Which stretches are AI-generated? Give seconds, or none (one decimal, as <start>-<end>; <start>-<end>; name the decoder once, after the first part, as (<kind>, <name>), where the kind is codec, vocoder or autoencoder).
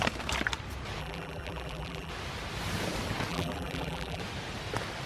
1.0-2.1 (vocoder, BigVGAN v2); 3.3-4.2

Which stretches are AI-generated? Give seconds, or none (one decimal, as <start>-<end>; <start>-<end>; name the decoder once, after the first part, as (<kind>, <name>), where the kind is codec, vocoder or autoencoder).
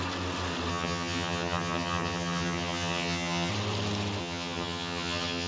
0.7-3.5 (vocoder, HiFi-GAN); 4.2-5.5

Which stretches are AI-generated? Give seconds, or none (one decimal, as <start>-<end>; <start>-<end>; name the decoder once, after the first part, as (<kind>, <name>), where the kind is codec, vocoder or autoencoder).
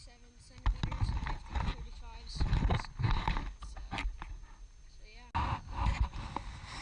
none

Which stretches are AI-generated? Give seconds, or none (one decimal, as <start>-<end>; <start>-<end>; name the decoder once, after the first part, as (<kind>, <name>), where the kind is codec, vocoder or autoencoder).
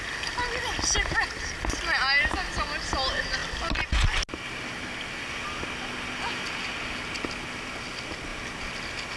none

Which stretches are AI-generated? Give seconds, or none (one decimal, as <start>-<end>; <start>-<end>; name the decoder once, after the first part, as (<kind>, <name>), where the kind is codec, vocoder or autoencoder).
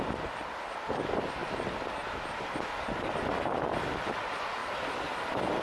4.6-5.6 (vocoder, BigVGAN v2)